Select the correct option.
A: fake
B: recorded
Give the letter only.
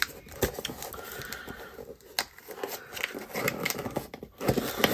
B